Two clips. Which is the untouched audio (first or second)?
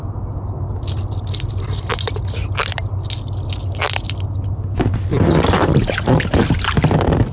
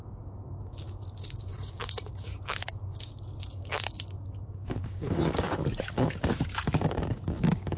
first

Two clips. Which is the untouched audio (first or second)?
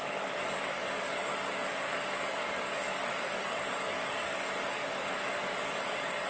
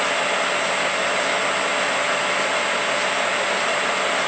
second